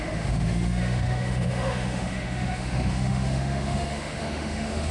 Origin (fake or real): fake